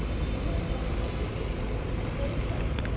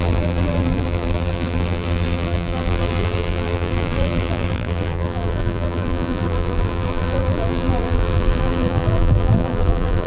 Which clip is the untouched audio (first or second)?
first